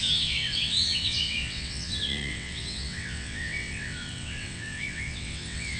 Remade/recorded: remade